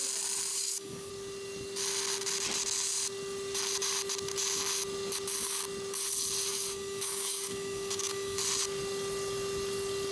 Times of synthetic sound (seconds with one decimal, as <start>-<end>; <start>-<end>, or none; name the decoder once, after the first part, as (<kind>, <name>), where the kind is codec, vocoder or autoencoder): 0.5-1.1 (codec, DAC); 6.5-8.4

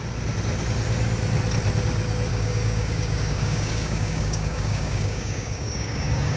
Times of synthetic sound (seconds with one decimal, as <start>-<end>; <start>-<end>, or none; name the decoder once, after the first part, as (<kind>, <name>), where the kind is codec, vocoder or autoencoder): 2.3-6.4 (codec, DAC)